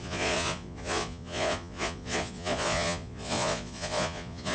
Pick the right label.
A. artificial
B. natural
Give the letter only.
A